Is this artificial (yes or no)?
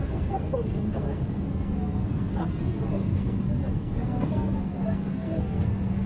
yes